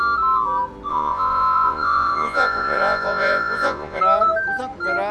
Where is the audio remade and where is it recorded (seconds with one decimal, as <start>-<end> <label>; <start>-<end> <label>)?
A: 0.0-0.9 recorded; 0.9-4.0 remade; 4.0-5.1 recorded